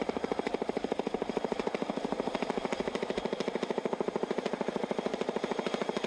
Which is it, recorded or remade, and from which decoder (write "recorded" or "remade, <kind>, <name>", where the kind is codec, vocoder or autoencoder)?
remade, vocoder, BigVGAN v2